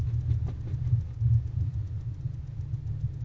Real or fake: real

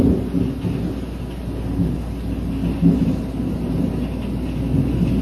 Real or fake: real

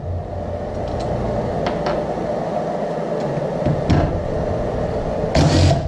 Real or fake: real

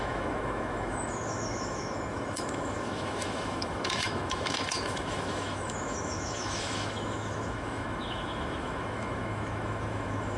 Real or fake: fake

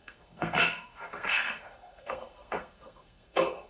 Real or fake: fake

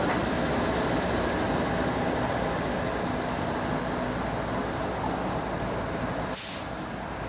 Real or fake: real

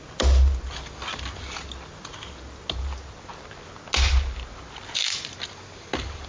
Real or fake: real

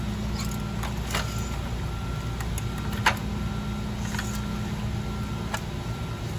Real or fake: real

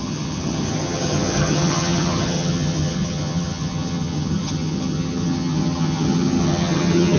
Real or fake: fake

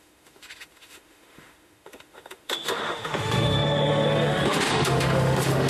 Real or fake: fake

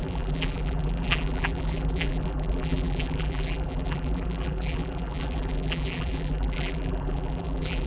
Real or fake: fake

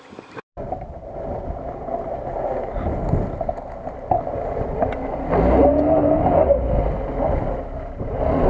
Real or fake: real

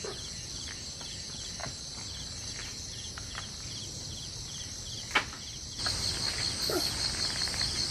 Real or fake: real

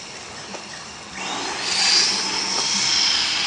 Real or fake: real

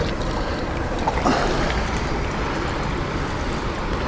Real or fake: real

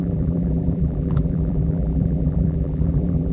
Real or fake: fake